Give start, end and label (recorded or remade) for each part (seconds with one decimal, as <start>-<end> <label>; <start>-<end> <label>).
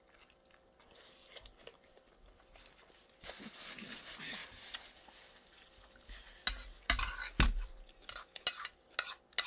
0.0-1.7 recorded; 1.7-4.0 remade; 4.0-9.5 recorded